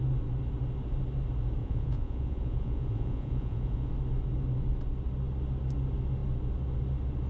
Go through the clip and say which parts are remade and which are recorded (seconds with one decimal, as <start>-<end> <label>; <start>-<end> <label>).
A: 0.0-1.6 recorded; 1.6-3.9 remade; 3.9-7.3 recorded